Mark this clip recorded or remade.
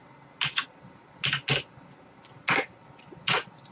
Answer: recorded